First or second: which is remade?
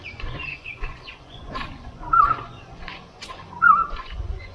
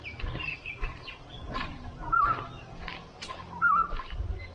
first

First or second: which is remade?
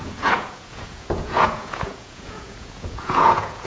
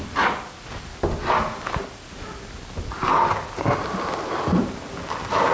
first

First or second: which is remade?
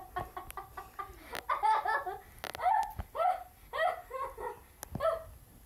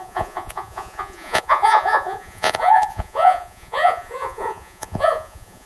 second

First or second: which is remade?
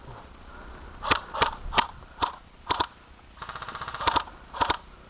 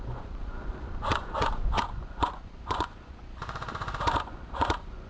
second